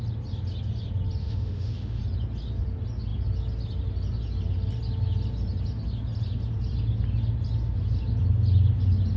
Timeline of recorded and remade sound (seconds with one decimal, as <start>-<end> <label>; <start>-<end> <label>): 0.0-1.2 recorded; 1.2-2.0 remade; 2.0-9.2 recorded